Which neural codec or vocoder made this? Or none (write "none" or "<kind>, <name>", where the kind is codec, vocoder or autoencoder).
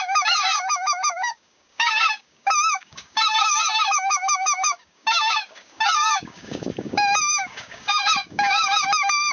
codec, DAC